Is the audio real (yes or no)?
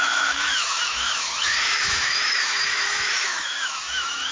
no